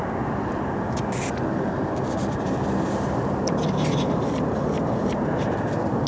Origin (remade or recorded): recorded